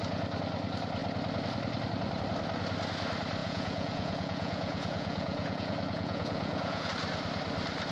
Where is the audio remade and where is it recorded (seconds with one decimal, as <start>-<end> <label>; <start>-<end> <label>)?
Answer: 0.0-3.4 recorded; 3.4-6.9 remade; 6.9-7.9 recorded